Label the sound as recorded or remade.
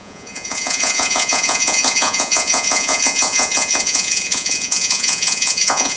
remade